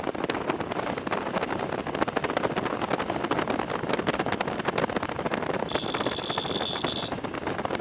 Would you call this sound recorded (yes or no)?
yes